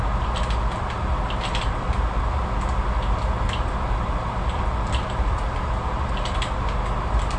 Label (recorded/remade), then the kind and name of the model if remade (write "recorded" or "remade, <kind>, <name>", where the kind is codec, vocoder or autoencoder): recorded